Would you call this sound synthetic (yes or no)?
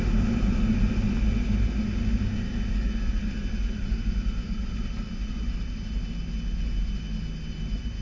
no